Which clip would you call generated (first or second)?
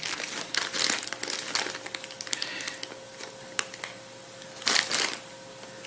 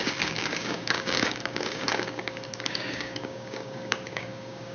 second